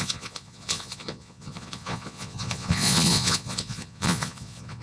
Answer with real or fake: fake